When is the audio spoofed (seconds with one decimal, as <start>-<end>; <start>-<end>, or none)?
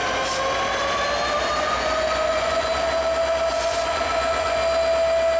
1.6-2.7; 3.5-4.6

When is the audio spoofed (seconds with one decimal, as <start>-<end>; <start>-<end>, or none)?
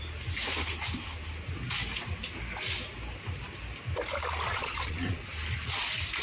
4.5-5.2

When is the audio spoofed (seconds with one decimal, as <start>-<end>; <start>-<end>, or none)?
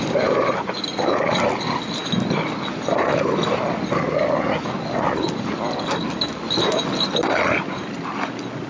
none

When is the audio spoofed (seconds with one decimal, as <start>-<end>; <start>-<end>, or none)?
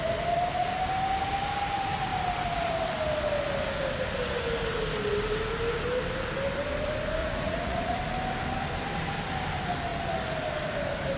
7.2-8.0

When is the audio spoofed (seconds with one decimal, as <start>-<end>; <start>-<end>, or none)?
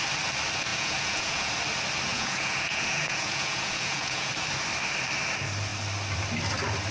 0.7-1.5; 2.1-4.3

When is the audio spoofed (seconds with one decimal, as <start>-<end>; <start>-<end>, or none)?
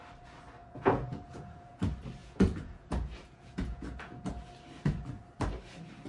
0.6-1.8; 2.2-4.5